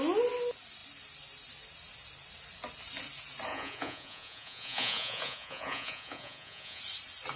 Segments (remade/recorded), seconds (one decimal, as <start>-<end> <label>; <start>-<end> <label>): 0.0-3.5 recorded; 3.5-6.8 remade; 6.8-7.4 recorded